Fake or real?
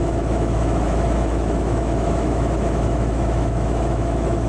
fake